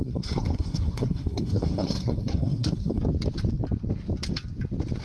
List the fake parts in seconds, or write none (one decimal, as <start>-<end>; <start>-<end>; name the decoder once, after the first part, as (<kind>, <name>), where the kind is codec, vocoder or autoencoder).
0.0-3.0 (codec, SNAC)